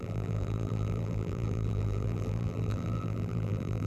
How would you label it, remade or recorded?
remade